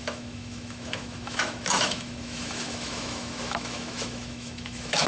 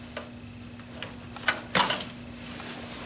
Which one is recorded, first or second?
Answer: second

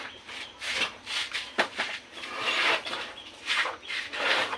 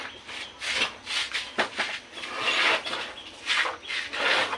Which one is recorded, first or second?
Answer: second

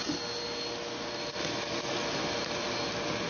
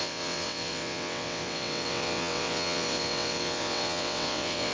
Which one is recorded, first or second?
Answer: first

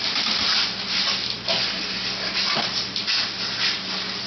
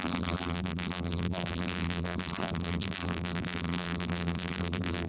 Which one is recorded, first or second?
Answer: first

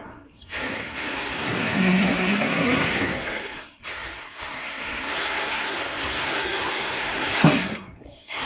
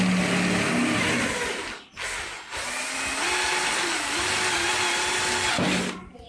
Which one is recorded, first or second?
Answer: second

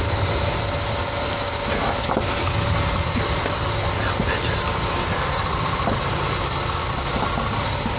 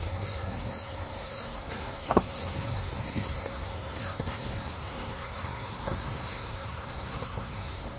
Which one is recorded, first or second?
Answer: first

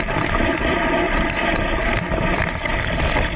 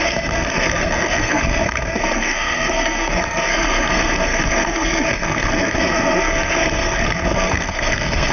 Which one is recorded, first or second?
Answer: first